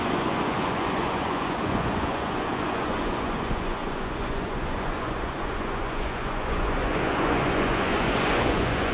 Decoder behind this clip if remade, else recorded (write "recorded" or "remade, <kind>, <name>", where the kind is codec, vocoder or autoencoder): remade, vocoder, Vocos